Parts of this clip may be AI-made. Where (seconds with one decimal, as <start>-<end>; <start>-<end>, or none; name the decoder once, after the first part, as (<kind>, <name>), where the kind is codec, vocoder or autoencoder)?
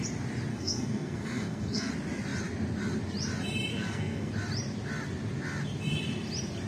0.5-1.9 (codec, SNAC); 3.7-4.3